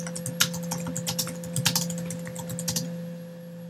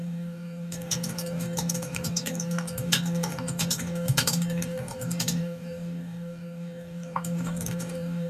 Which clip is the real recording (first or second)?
first